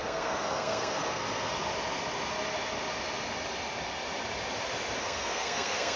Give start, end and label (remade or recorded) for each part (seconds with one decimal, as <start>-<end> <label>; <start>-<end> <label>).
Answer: 0.0-1.5 remade; 1.5-5.0 recorded; 5.0-6.0 remade